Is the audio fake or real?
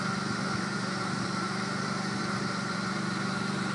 fake